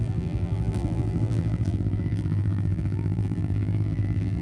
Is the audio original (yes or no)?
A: no